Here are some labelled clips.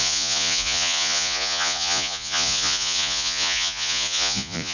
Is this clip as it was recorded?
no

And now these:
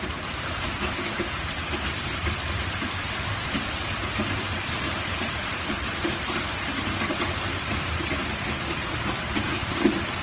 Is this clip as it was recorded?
no